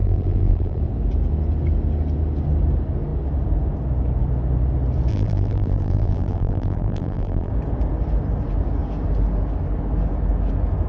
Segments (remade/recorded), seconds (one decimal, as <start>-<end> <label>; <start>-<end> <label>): 0.0-0.8 remade; 0.8-5.1 recorded; 5.1-7.5 remade; 7.5-10.9 recorded